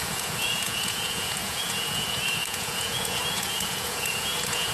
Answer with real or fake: fake